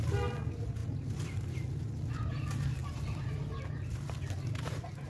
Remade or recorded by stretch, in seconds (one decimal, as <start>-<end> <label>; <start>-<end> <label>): 0.0-5.1 recorded